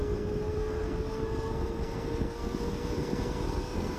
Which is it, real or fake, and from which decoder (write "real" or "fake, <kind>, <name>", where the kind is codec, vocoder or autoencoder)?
fake, codec, SNAC